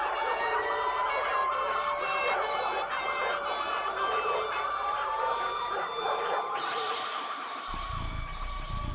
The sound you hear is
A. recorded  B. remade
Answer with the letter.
B